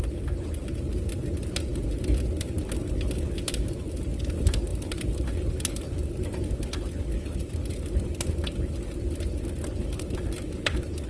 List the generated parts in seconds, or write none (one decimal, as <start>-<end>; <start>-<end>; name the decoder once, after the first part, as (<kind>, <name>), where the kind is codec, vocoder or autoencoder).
none